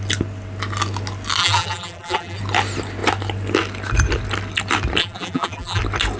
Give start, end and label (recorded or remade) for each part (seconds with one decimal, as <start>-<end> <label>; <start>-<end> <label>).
0.0-1.4 recorded; 1.4-2.4 remade; 2.4-5.0 recorded; 5.0-5.8 remade; 5.8-6.2 recorded